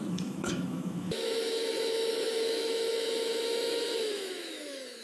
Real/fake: fake